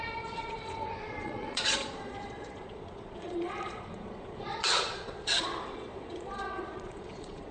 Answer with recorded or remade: remade